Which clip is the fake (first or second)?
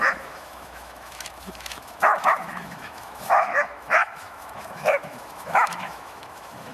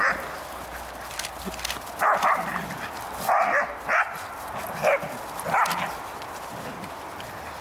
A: first